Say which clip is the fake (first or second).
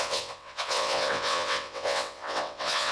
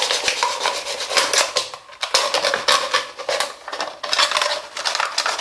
first